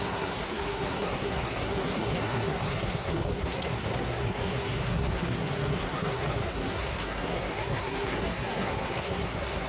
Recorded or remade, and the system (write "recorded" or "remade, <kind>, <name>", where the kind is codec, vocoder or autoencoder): remade, codec, SNAC